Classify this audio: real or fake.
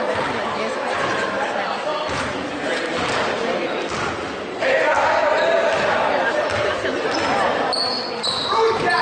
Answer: real